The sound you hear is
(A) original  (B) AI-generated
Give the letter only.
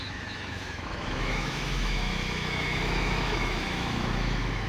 B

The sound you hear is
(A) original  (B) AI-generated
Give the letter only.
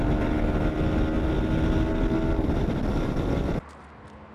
A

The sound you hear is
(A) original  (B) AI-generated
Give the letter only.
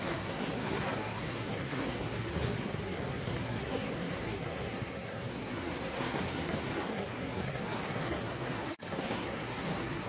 B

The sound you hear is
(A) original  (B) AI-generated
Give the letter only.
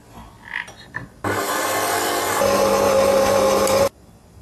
A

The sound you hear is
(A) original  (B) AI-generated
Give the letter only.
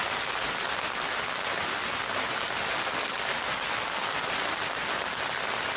A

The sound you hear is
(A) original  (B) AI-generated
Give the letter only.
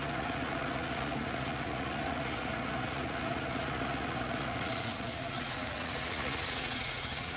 B